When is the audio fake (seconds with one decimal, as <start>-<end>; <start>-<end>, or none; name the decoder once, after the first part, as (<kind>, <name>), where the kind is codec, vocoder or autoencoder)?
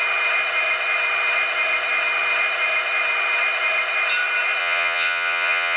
4.6-5.8 (vocoder, Vocos)